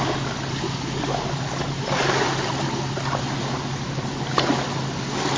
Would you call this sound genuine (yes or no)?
yes